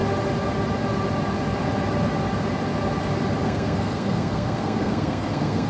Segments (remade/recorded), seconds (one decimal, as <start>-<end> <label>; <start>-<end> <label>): 0.0-3.4 recorded; 3.4-5.7 remade